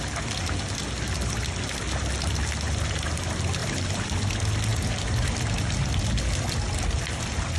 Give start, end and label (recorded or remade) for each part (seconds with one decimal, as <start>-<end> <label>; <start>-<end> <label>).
0.0-4.7 recorded; 4.7-5.7 remade; 5.7-7.6 recorded